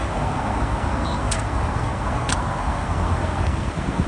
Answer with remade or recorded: remade